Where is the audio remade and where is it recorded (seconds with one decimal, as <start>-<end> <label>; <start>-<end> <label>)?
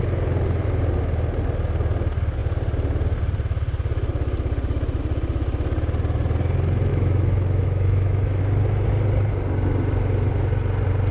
0.0-6.9 recorded; 6.9-8.4 remade; 8.4-11.1 recorded